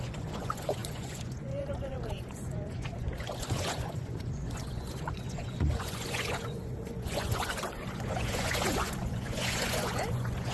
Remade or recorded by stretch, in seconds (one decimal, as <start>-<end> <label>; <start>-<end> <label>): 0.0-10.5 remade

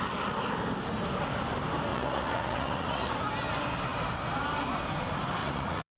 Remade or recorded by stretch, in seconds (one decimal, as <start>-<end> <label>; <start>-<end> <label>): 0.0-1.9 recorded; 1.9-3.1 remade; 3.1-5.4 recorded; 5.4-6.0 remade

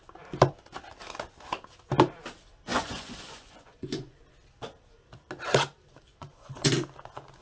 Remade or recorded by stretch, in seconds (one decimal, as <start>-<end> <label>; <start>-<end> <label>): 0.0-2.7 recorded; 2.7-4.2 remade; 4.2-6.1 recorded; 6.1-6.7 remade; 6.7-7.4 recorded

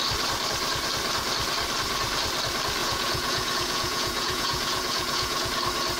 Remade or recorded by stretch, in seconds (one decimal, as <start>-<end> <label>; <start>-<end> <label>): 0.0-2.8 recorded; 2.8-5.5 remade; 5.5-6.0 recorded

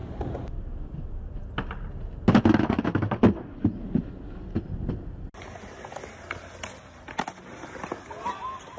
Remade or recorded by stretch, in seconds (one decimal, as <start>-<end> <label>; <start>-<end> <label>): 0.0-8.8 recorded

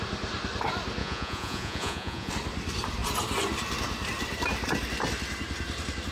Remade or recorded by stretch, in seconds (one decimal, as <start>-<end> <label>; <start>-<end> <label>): 0.0-1.0 recorded; 1.0-2.3 remade; 2.3-6.1 recorded